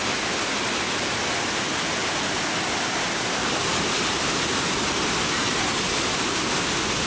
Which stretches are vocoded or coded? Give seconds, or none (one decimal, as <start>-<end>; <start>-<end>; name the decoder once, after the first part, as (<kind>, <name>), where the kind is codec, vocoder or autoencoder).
3.2-7.1 (vocoder, BigVGAN v2)